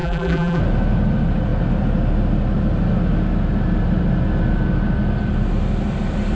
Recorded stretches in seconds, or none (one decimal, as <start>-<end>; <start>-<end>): 0.6-6.4